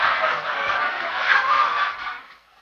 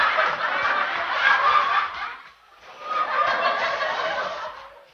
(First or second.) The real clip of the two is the second